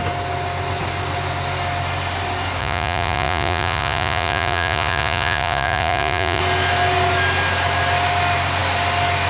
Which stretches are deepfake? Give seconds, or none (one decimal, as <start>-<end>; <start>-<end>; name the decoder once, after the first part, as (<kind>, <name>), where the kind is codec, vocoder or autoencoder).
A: 2.6-6.4 (vocoder, Vocos)